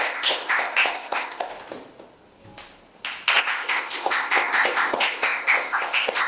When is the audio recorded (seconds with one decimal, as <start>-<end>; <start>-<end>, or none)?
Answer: 1.5-3.4

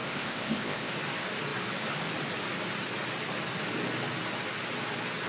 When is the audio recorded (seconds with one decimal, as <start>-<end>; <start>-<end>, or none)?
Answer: 0.9-5.3